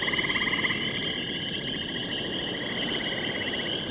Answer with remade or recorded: recorded